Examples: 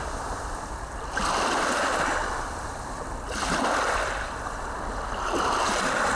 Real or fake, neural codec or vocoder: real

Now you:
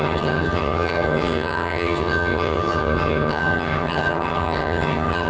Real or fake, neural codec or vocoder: fake, vocoder, HiFi-GAN